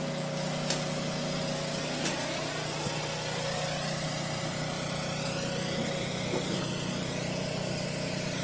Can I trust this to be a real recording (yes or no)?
yes